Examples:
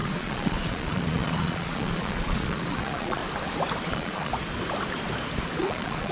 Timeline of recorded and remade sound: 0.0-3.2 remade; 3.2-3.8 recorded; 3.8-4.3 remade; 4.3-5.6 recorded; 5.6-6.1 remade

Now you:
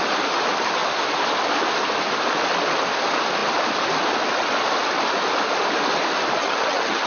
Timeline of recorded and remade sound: 0.0-6.4 recorded; 6.4-7.1 remade